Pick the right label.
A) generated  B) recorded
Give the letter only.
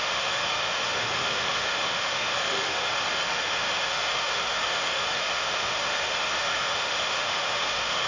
A